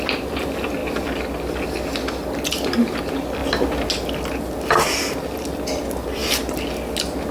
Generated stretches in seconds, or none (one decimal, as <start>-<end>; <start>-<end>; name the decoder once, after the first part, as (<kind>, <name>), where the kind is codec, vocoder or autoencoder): none